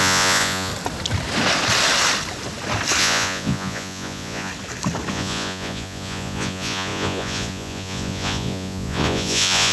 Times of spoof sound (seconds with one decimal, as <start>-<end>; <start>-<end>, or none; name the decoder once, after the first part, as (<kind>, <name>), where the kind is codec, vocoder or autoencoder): 0.0-0.7 (vocoder, Vocos); 3.0-4.5; 5.1-9.7